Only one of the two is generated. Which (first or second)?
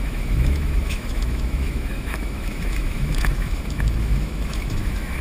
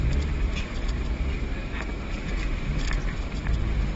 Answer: first